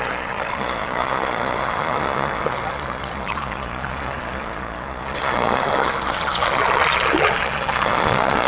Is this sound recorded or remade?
remade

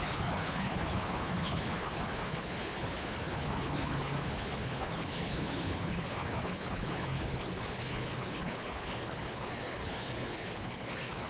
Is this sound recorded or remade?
remade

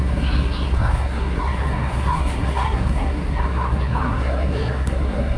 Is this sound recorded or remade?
remade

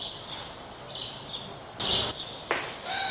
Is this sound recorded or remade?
recorded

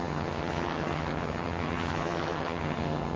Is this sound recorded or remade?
remade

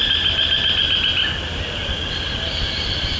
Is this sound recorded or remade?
recorded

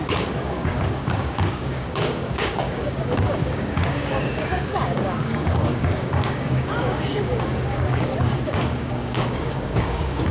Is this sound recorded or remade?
remade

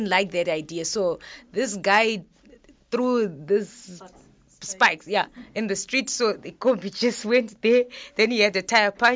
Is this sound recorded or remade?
recorded